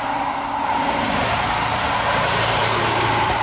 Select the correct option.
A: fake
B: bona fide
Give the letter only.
B